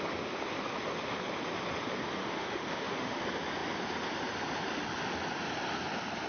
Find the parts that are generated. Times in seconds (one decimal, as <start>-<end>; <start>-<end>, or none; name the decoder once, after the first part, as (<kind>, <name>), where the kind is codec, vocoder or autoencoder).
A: 2.2-3.2 (autoencoder, DAC-VAE)